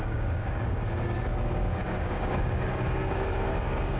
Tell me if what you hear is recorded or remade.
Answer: remade